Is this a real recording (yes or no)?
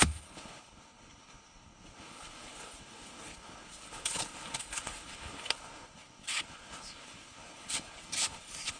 no